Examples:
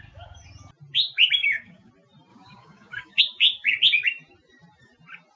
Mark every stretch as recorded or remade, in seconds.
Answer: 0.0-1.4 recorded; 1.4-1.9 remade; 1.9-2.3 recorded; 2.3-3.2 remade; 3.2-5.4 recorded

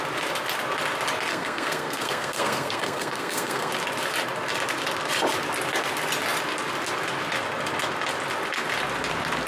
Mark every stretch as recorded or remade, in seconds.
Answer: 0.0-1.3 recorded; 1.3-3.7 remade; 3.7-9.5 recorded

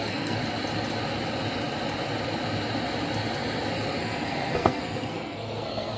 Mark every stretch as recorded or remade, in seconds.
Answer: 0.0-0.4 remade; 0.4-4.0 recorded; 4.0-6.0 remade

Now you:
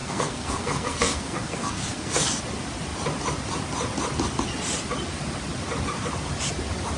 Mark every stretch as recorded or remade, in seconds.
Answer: 0.0-2.4 remade; 2.4-7.0 recorded

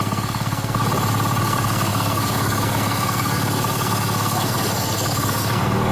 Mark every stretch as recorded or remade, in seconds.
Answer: 0.0-0.8 remade; 0.8-1.4 recorded; 1.4-5.9 remade

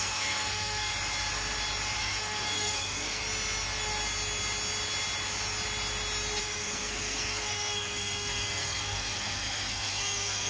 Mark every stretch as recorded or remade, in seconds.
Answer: 0.0-0.9 remade; 0.9-2.0 recorded; 2.0-3.2 remade; 3.2-6.4 recorded; 6.4-10.5 remade

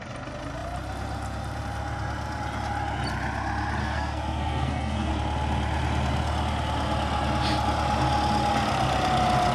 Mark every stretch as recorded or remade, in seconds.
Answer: 0.0-3.8 recorded; 3.8-5.1 remade; 5.1-9.5 recorded

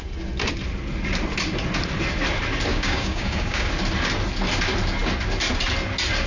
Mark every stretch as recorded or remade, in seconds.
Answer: 0.0-2.7 recorded; 2.7-3.7 remade; 3.7-6.3 recorded